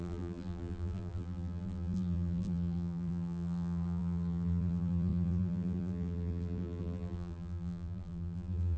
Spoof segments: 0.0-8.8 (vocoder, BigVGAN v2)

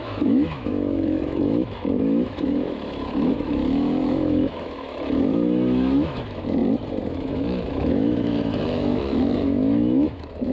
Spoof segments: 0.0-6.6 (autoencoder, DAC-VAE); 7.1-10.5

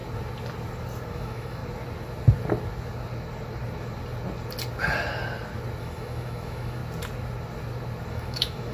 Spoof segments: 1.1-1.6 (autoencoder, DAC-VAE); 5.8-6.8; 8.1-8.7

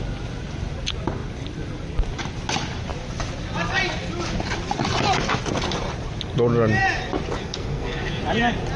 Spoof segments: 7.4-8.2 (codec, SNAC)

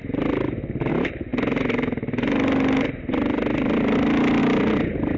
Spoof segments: none

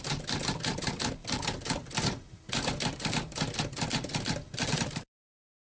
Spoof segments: 0.0-1.8 (vocoder, BigVGAN v2); 4.5-5.7

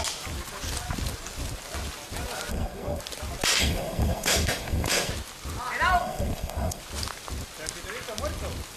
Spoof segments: 2.5-3.0 (codec, SNAC); 3.6-5.1; 5.9-6.8

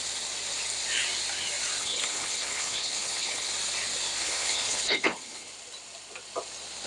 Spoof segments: 1.8-3.5 (codec, HILCodec); 4.2-5.5